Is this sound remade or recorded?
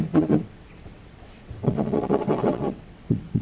remade